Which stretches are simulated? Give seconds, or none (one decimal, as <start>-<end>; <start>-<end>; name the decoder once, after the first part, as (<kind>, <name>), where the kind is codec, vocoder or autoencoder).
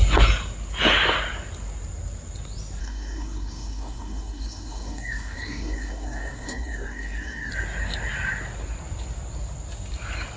2.8-7.5 (codec, SNAC)